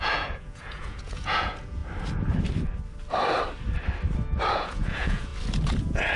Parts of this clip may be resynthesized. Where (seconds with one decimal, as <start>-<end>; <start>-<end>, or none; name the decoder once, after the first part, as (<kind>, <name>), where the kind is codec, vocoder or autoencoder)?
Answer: 0.0-1.8 (vocoder, Vocos); 4.5-5.3; 5.8-6.2

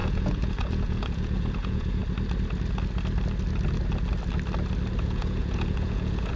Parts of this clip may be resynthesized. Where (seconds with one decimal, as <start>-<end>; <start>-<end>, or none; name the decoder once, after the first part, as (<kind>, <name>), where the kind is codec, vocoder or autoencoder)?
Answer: 0.0-2.0 (vocoder, Vocos); 5.0-6.4

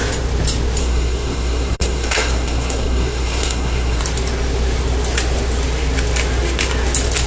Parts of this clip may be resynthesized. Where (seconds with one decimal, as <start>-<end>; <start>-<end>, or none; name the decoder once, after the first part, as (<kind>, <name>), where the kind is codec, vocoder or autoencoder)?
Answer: 0.8-4.0 (codec, SNAC)

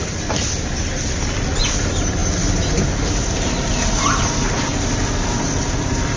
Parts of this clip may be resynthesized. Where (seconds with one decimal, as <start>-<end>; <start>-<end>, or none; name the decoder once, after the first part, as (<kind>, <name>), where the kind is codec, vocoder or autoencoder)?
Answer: none